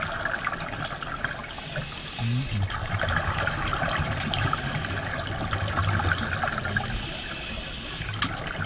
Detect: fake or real real